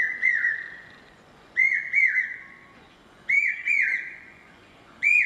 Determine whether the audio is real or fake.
fake